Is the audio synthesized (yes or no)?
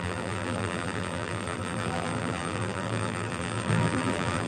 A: yes